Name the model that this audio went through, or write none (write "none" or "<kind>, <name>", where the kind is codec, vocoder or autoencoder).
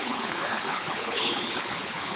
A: codec, HILCodec